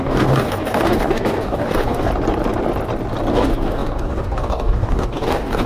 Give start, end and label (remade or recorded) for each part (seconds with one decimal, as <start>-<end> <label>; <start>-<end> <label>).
0.0-2.1 remade; 2.1-3.3 recorded; 3.3-5.7 remade